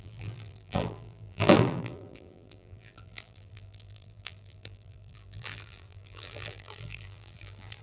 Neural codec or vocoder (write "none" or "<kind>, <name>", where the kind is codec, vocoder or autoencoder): vocoder, BigVGAN v2